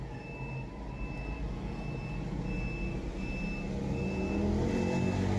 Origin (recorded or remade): recorded